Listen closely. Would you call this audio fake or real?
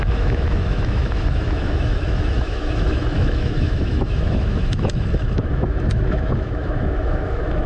fake